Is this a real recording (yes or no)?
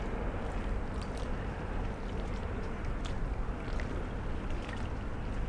yes